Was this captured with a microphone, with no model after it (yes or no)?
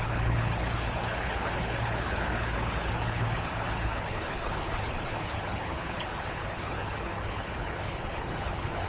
no